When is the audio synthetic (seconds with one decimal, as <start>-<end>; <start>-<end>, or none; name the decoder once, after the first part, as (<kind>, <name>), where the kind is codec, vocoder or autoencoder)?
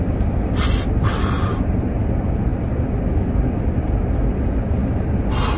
none